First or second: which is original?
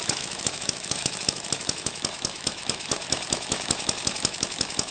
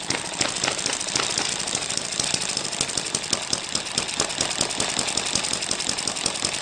second